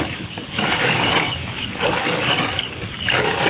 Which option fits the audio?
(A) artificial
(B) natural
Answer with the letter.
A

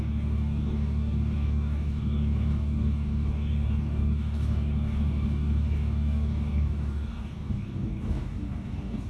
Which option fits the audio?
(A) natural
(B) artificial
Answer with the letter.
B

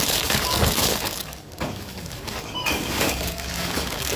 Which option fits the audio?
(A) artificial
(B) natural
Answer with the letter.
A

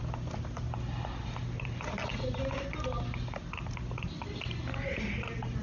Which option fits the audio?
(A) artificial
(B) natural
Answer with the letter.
B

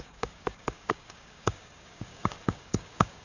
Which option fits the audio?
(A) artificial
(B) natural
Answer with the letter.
A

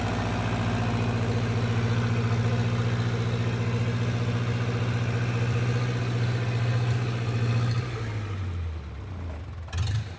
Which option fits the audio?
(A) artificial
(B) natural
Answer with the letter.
B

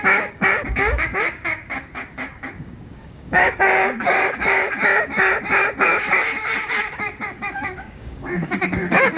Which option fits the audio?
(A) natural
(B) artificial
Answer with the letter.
B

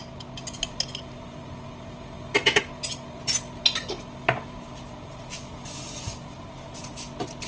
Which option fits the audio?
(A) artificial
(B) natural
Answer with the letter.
B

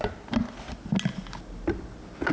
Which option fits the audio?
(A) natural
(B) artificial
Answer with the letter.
A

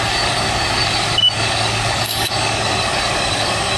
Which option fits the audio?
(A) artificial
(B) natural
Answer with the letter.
A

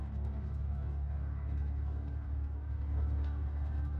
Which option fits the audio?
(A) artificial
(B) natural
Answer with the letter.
A